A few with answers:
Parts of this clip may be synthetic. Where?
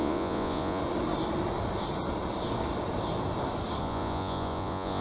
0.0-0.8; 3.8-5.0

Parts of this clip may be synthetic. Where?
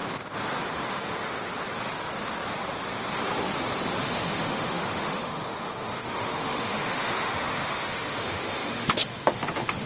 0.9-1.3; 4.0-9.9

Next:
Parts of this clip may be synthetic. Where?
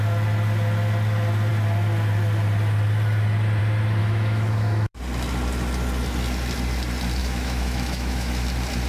4.0-5.0; 7.2-8.3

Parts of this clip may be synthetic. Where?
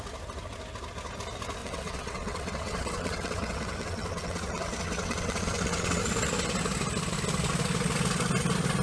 1.6-6.0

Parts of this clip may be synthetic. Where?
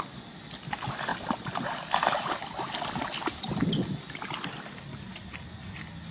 none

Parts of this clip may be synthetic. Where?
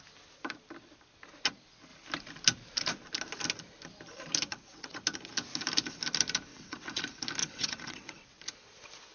4.5-5.0; 6.5-7.0; 7.4-8.4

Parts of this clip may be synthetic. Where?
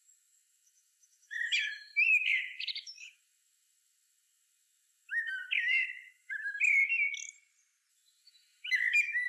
0.0-6.8; 7.9-9.3